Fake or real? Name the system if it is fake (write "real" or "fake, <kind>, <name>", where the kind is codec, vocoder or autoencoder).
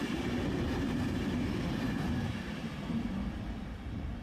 real